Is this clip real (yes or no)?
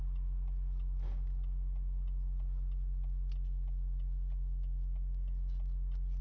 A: yes